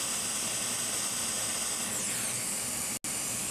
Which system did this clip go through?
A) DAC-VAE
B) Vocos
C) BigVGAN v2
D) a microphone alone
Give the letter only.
D